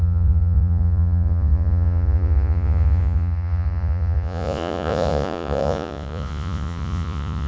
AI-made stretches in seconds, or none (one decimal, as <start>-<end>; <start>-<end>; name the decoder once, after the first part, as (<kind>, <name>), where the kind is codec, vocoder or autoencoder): 0.0-7.5 (vocoder, Vocos)